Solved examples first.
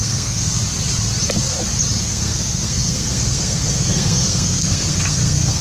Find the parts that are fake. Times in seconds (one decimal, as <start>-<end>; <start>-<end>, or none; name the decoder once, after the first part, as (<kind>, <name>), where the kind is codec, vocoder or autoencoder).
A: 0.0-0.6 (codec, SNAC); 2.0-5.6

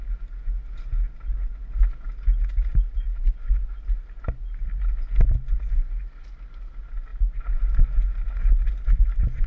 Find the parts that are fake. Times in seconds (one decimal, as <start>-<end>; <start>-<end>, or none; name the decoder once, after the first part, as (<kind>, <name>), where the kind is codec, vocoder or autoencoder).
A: none

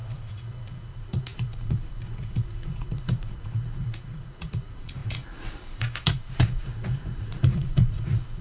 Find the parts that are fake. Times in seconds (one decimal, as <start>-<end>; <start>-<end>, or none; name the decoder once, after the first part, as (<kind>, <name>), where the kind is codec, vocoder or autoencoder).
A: 0.0-8.4 (vocoder, Vocos)

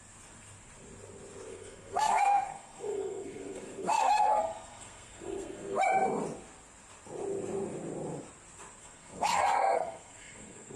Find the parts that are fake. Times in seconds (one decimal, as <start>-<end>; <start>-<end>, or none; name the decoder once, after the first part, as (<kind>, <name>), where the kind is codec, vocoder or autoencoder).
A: 1.5-5.8 (codec, SNAC); 8.8-10.8

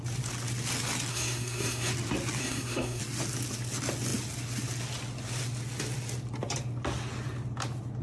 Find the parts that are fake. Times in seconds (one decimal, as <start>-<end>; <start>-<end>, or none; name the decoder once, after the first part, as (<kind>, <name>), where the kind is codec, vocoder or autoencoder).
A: 1.1-1.9 (codec, SNAC); 2.4-3.0